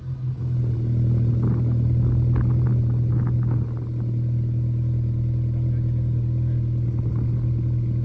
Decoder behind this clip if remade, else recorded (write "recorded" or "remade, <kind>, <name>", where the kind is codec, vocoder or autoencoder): recorded